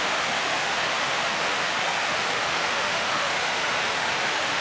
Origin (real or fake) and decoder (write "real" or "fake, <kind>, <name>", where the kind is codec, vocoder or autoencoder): fake, autoencoder, DAC-VAE